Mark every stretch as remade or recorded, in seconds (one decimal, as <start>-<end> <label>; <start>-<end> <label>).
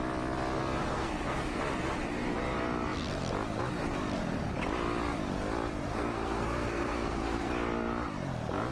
0.0-0.8 recorded; 0.8-1.6 remade; 1.6-5.9 recorded; 5.9-7.5 remade; 7.5-8.7 recorded